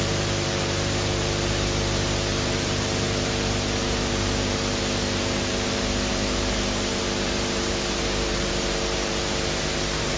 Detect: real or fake fake